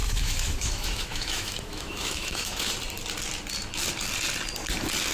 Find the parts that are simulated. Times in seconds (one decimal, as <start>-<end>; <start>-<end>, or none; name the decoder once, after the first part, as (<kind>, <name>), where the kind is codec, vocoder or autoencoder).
0.0-2.7 (autoencoder, DAC-VAE)